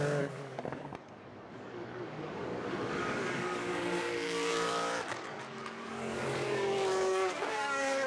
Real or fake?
fake